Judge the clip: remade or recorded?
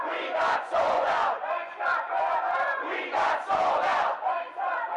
remade